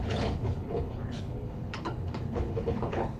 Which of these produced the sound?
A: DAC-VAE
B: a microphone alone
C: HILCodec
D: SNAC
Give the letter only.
C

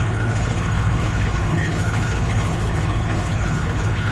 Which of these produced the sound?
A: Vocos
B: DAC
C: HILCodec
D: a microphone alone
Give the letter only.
C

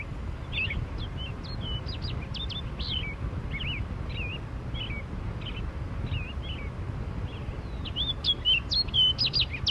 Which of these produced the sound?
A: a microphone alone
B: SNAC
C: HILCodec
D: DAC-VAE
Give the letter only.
A